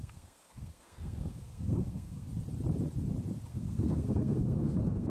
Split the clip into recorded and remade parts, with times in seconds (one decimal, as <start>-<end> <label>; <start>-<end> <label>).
0.0-2.3 remade; 2.3-3.5 recorded; 3.5-5.1 remade